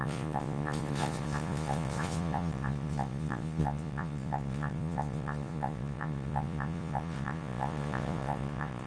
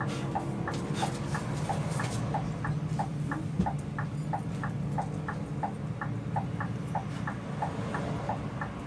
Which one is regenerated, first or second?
first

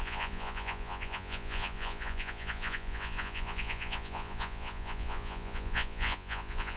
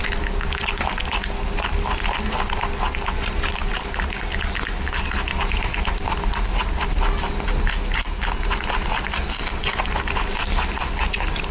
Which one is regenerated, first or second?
first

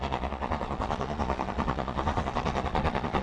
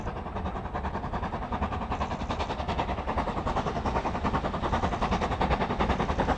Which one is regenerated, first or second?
first